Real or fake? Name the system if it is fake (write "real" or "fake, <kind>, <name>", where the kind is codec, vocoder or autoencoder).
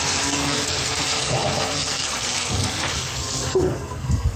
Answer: fake, codec, SNAC